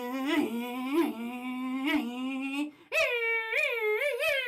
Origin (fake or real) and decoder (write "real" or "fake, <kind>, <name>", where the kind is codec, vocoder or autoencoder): real